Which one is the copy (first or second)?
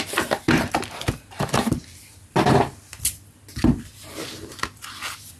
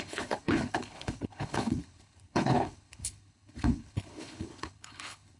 second